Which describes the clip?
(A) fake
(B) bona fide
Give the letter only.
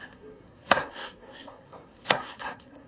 A